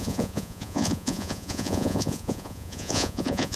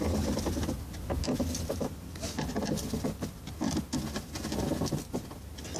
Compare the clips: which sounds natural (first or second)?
second